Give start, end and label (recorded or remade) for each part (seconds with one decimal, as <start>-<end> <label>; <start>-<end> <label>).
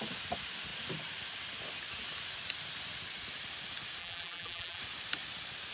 0.0-4.0 recorded; 4.0-4.8 remade; 4.8-5.7 recorded